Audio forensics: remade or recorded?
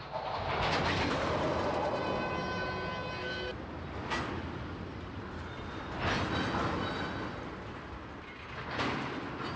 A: recorded